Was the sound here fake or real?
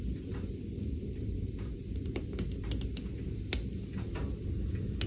real